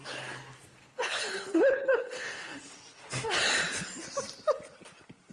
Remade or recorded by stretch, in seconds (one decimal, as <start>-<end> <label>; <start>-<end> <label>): 0.0-0.8 recorded; 0.8-2.6 remade; 2.6-5.3 recorded